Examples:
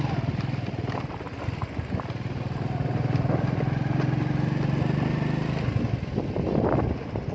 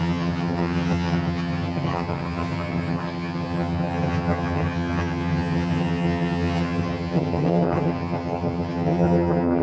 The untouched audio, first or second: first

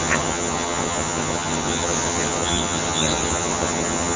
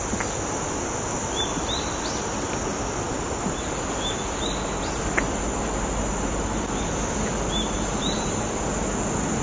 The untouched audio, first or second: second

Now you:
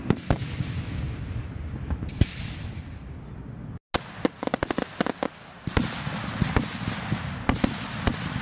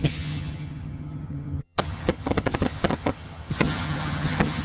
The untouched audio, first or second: first